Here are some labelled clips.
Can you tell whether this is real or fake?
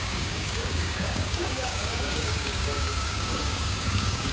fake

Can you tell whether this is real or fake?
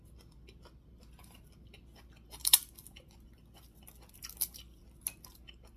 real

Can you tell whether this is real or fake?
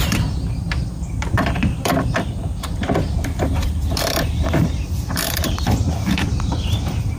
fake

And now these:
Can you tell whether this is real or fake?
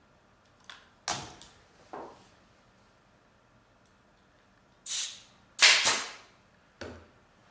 real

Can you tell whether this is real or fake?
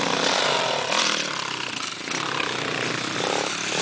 real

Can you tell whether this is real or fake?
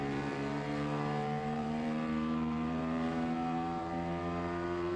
fake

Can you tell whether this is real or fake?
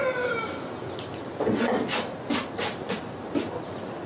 real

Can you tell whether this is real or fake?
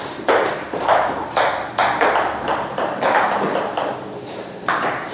fake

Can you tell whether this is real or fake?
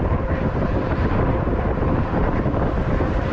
fake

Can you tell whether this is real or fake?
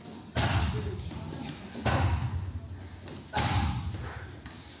real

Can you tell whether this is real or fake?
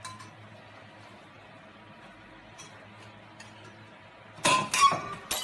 real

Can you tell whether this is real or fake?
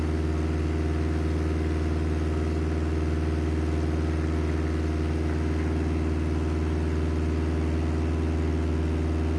real